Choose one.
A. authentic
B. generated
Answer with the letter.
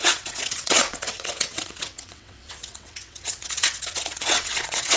B